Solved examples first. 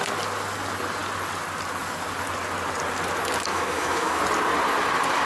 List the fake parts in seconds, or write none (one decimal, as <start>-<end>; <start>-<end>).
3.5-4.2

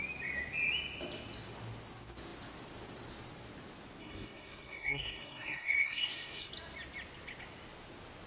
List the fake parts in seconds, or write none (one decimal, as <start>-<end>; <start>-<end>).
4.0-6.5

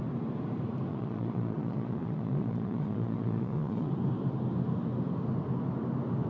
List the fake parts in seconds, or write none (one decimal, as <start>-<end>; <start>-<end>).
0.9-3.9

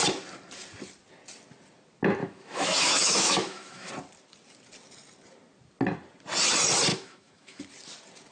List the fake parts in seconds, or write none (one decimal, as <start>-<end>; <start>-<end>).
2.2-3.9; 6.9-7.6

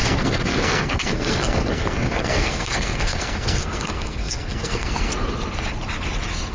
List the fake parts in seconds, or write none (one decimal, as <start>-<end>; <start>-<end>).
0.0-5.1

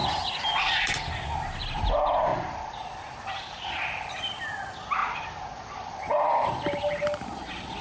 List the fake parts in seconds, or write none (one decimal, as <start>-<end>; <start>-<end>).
0.0-1.0; 2.3-4.3; 5.0-6.5